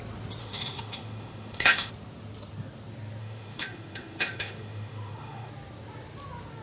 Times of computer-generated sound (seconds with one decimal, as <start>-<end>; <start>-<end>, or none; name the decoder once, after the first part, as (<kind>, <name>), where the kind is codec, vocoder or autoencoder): 0.4-1.9 (autoencoder, DAC-VAE); 3.2-5.5